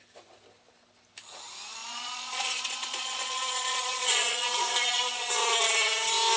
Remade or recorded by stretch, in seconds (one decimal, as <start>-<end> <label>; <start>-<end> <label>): 0.0-1.8 recorded; 1.8-5.3 remade; 5.3-6.4 recorded